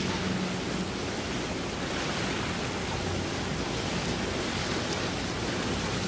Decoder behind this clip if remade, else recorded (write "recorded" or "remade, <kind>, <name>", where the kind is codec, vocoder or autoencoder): recorded